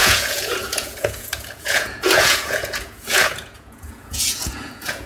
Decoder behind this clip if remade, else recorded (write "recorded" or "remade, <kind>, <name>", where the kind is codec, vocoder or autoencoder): remade, vocoder, Vocos